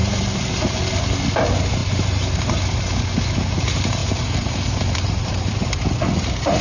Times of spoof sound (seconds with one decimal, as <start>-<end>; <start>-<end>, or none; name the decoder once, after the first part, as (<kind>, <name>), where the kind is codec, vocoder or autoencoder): 0.0-0.8 (vocoder, BigVGAN v2); 4.0-5.8